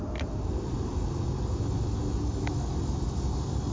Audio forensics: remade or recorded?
recorded